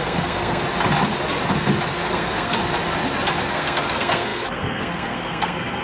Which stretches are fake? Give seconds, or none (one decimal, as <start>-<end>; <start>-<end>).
0.0-0.6; 2.1-2.6; 3.5-5.8